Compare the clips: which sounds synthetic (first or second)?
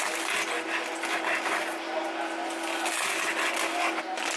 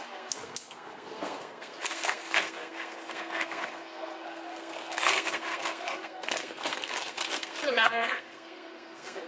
second